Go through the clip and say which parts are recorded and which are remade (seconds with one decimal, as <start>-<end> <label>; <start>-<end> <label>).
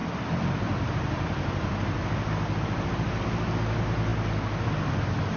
0.0-5.4 recorded